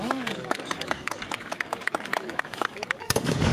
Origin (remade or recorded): remade